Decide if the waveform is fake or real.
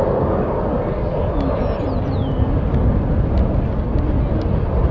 real